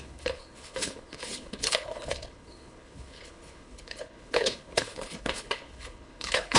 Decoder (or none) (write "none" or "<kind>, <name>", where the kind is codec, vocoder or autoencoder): codec, HILCodec